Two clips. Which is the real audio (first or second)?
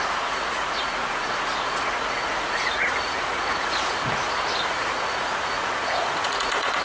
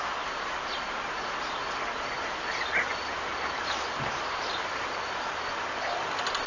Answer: second